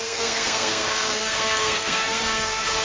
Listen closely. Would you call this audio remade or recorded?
remade